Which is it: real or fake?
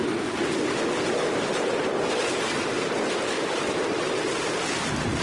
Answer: real